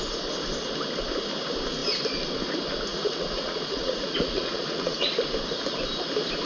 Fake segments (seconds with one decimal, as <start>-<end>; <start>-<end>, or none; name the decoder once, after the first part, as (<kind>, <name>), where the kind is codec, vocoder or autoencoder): 2.9-5.1 (vocoder, Vocos)